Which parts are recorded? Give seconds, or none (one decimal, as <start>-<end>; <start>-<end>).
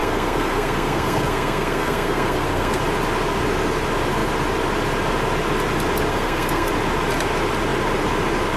2.8-6.1; 6.7-8.6